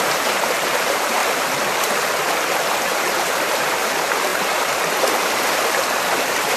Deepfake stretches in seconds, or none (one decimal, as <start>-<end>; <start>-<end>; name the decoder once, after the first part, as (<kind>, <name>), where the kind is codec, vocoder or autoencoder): 0.0-1.2 (vocoder, BigVGAN v2); 2.6-6.6